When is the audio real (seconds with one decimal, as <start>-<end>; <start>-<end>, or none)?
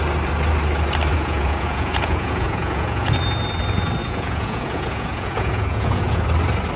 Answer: 0.0-1.1; 3.2-4.0; 6.2-6.8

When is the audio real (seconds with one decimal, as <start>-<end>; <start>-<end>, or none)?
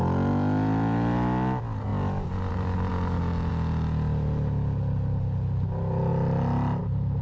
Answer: 0.0-7.2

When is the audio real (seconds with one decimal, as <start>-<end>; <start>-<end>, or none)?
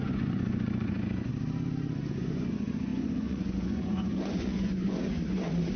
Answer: 1.3-2.1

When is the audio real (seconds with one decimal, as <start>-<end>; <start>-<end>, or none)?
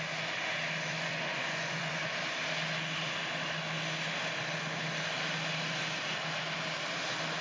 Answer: 0.0-0.9; 2.2-7.4